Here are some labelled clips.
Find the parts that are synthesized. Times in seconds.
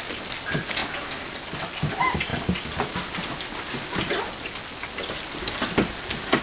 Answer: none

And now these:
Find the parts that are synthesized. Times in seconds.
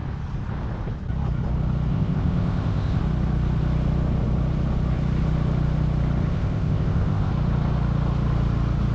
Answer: 1.9-3.0 (codec, ZipCodec); 6.3-7.3